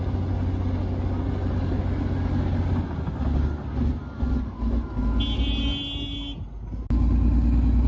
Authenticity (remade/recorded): recorded